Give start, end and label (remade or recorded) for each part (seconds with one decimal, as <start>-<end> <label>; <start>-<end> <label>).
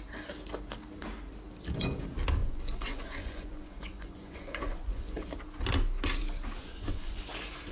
0.0-2.4 recorded; 2.4-5.3 remade; 5.3-6.6 recorded; 6.6-7.3 remade; 7.3-7.7 recorded